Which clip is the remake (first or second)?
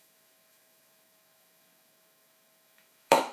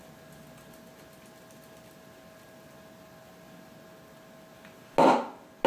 first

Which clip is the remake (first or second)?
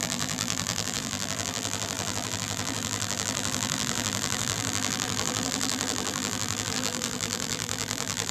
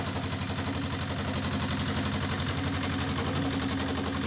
first